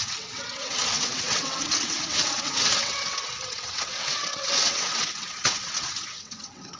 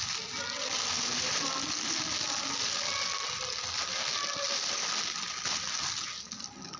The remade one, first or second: first